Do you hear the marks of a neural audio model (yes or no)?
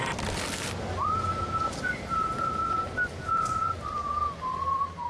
no